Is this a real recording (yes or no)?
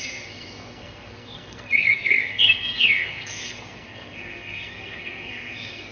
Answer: no